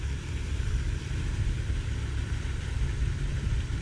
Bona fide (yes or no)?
no